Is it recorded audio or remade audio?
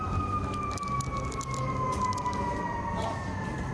recorded